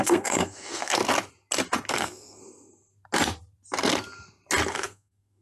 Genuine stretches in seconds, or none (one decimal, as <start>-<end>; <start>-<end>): 1.0-1.9; 2.4-4.7